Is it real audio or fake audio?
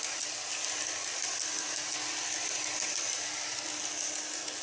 real